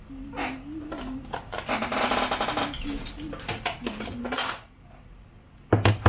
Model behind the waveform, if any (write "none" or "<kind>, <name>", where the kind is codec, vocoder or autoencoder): none